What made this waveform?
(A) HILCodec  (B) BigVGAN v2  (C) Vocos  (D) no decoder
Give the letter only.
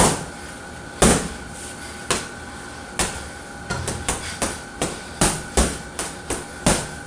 D